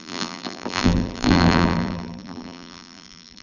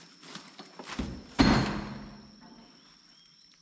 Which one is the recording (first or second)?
second